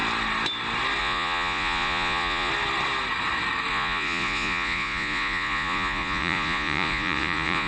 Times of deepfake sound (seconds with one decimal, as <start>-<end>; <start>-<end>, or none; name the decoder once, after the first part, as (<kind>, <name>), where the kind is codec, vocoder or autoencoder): 1.0-2.5 (vocoder, Vocos); 3.7-7.7

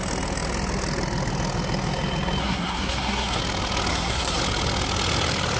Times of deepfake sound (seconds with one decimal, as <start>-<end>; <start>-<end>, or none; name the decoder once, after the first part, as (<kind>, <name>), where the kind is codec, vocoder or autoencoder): 2.4-3.4 (codec, SNAC); 3.9-4.4